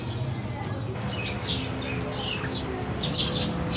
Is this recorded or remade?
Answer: recorded